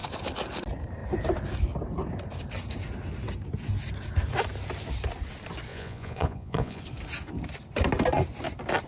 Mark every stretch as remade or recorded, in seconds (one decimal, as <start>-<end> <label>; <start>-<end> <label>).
0.0-5.7 recorded; 5.7-6.8 remade; 6.8-8.9 recorded